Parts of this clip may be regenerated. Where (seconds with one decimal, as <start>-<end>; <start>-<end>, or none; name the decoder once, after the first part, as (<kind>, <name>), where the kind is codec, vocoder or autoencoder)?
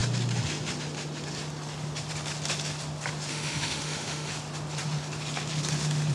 3.3-4.3 (autoencoder, DAC-VAE)